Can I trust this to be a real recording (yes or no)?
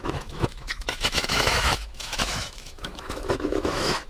no